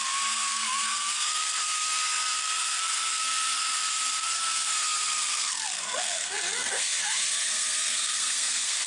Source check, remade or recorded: remade